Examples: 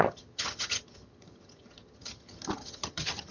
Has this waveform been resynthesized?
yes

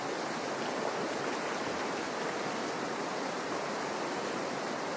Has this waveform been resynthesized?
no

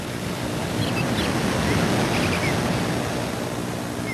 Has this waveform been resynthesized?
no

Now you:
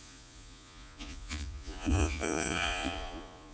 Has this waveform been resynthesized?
yes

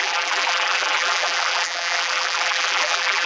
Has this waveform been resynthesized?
yes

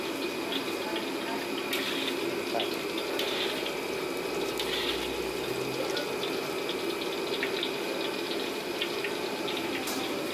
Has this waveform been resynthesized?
no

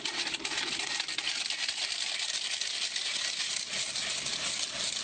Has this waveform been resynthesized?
no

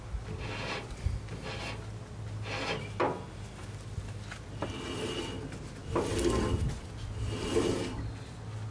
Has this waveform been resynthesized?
no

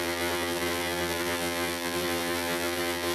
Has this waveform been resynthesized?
yes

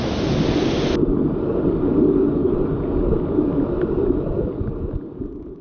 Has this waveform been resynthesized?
no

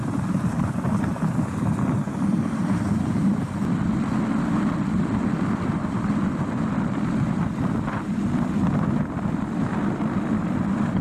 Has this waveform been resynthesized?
no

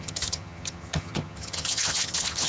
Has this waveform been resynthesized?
yes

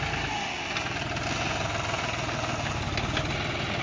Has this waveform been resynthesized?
no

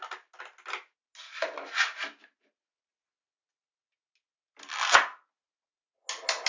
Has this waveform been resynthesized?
no